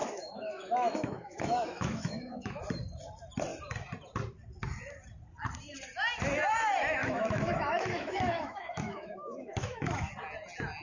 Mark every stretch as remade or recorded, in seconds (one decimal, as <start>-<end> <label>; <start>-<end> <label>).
0.0-2.6 remade; 2.6-7.0 recorded; 7.0-10.1 remade; 10.1-10.8 recorded